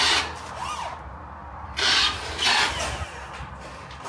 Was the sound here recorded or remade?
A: recorded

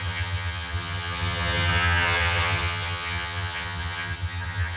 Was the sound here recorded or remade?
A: remade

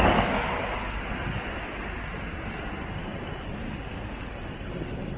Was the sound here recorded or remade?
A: recorded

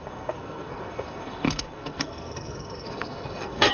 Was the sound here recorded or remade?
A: remade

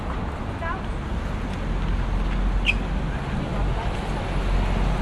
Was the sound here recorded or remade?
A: recorded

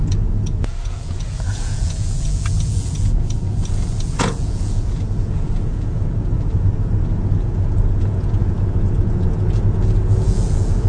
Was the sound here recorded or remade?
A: remade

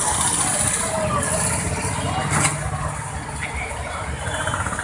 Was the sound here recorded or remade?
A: recorded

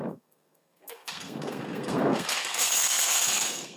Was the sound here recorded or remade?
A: remade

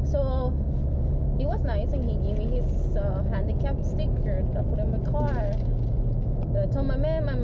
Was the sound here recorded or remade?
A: recorded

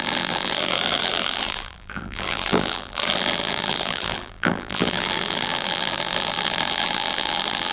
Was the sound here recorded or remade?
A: remade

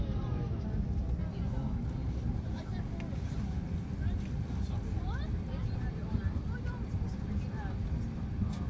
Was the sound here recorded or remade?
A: recorded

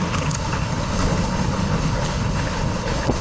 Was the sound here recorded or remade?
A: remade